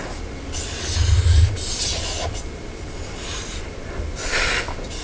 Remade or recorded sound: recorded